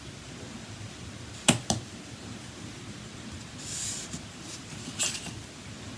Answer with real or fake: real